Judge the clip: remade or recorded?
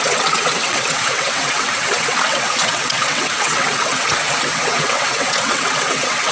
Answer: remade